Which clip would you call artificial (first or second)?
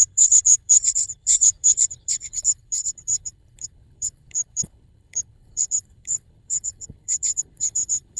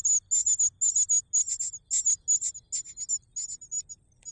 first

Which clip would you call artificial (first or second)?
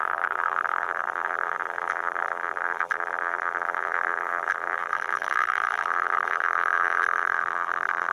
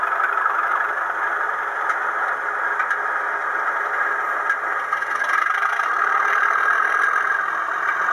first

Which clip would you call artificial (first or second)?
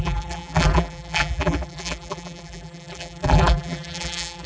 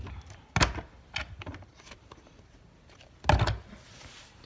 first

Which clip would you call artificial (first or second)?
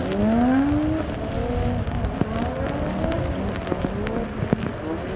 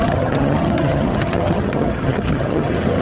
second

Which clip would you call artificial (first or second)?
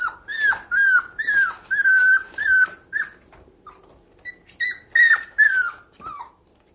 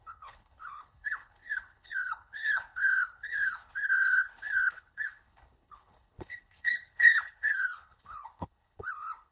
second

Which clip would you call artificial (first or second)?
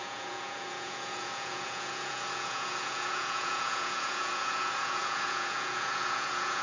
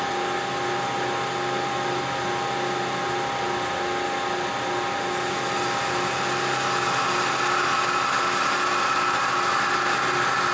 first